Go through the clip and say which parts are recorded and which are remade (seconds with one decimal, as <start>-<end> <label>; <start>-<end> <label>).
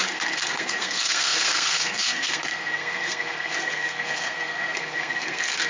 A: 0.0-5.7 remade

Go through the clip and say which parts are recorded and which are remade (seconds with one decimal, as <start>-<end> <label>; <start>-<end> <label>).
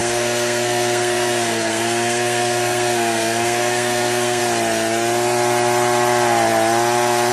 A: 0.0-4.4 remade; 4.4-7.3 recorded